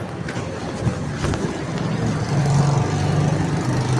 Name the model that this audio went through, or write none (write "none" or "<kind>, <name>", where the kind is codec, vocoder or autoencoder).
none